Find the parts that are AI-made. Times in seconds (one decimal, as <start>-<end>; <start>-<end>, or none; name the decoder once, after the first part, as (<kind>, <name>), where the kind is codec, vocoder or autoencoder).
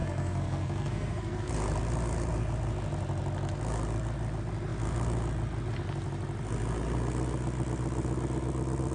0.0-1.5 (codec, SNAC)